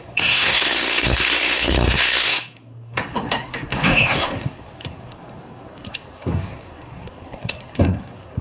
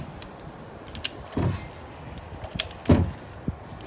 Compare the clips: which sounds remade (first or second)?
first